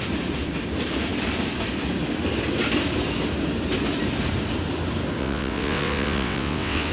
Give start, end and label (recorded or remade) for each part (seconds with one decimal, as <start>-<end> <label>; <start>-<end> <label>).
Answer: 0.0-5.2 recorded; 5.2-6.9 remade